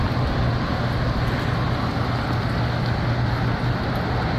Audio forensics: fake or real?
real